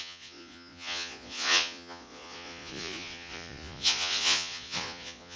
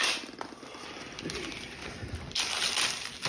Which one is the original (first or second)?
second